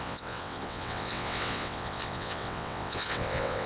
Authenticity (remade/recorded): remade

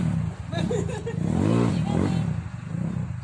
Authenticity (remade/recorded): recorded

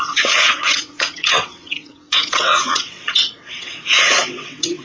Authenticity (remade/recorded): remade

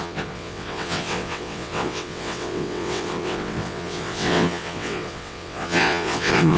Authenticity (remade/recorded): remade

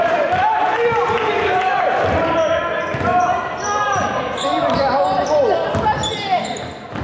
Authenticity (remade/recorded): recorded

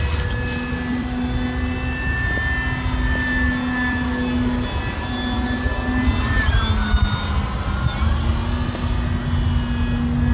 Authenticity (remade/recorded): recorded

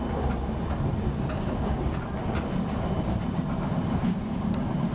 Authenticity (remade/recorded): recorded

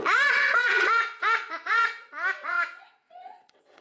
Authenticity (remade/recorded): remade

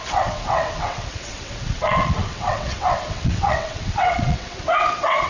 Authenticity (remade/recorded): remade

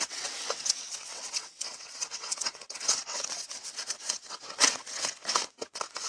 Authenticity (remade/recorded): remade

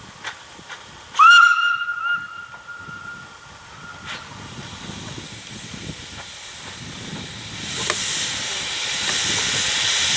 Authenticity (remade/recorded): recorded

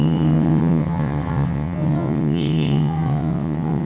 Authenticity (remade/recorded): remade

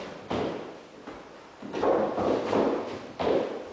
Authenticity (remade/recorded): recorded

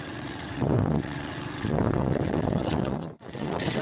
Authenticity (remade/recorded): remade